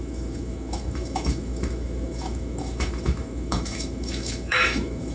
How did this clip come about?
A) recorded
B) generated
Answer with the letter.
B